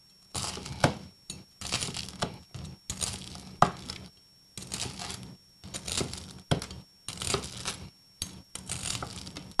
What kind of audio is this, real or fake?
real